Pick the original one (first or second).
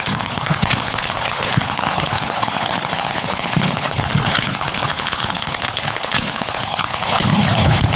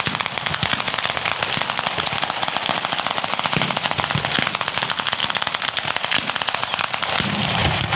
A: second